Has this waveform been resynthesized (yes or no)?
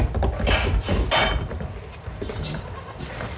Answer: no